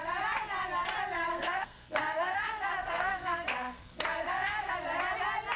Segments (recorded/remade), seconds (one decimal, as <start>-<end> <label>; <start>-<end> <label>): 0.0-1.3 recorded; 1.3-4.7 remade; 4.7-5.6 recorded